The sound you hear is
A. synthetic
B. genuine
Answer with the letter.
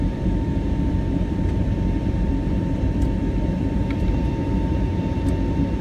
A